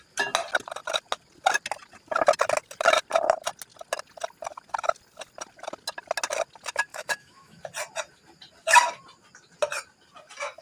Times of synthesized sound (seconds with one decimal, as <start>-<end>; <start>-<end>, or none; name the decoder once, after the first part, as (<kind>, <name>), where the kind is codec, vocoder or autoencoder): 6.9-7.6 (autoencoder, DAC-VAE)